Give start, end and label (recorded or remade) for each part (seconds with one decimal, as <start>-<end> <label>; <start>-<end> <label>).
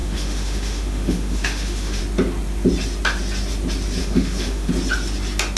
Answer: 0.0-2.0 remade; 2.0-4.0 recorded; 4.0-4.7 remade; 4.7-5.6 recorded